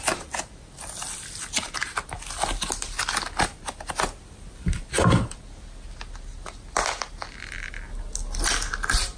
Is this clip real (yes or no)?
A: yes